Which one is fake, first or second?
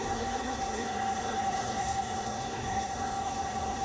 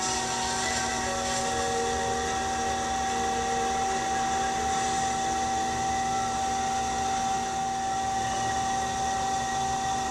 first